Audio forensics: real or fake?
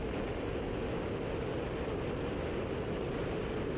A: real